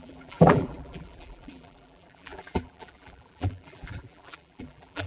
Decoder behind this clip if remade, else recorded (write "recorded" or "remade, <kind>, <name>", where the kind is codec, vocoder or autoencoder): remade, vocoder, BigVGAN v2